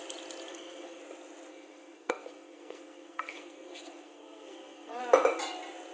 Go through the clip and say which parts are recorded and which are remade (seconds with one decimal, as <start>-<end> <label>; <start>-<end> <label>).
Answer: 0.0-0.5 recorded; 0.5-1.0 remade; 1.0-1.5 recorded; 1.5-5.0 remade; 5.0-5.9 recorded